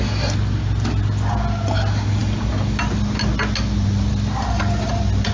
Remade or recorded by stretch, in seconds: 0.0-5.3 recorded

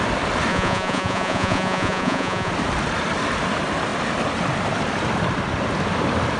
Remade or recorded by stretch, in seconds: 0.0-0.5 recorded; 0.5-2.5 remade; 2.5-6.4 recorded

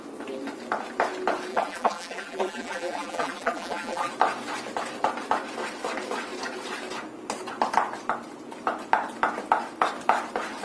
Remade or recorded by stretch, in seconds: 0.0-1.5 recorded; 1.5-4.1 remade; 4.1-10.6 recorded

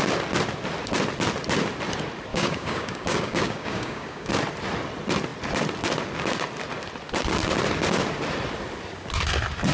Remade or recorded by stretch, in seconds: 0.0-2.3 recorded; 2.3-4.3 remade; 4.3-9.7 recorded

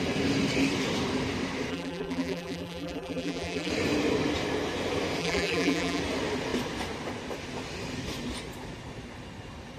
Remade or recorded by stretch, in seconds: 0.0-1.7 recorded; 1.7-3.7 remade; 3.7-5.2 recorded; 5.2-6.0 remade; 6.0-9.8 recorded

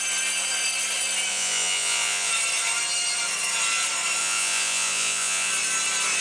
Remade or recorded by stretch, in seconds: 0.0-1.3 recorded; 1.3-2.3 remade; 2.3-4.2 recorded; 4.2-5.5 remade; 5.5-6.2 recorded

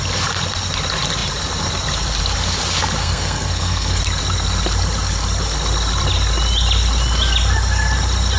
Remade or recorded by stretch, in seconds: 0.0-3.0 recorded; 3.0-4.0 remade; 4.0-8.4 recorded

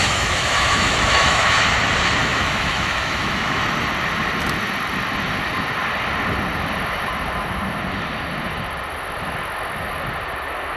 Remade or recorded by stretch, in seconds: 0.0-1.6 remade; 1.6-2.2 recorded; 2.2-3.6 remade; 3.6-10.8 recorded